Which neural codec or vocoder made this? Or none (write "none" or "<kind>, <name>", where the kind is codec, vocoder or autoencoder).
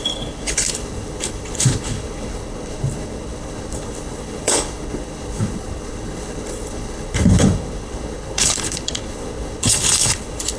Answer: codec, HILCodec